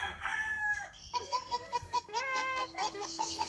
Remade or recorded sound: remade